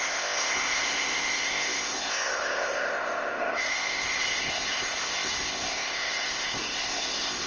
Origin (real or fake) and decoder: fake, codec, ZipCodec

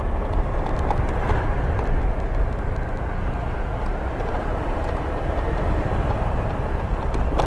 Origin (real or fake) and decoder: real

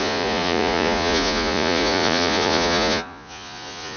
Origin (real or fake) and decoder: fake, vocoder, Vocos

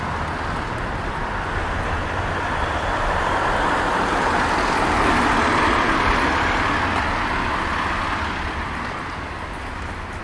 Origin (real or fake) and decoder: real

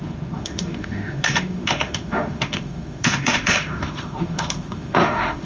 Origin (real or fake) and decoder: fake, autoencoder, DAC-VAE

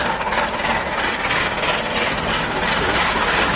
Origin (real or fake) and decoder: real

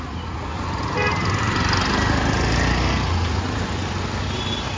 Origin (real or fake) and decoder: real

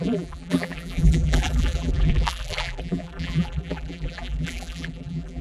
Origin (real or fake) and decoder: fake, vocoder, BigVGAN v2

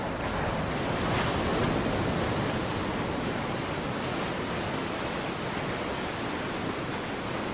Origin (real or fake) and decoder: real